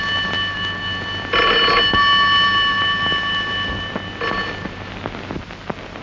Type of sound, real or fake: real